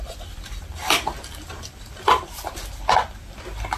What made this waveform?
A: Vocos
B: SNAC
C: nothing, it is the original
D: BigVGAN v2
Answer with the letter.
D